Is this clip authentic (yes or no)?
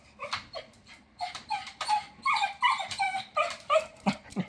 no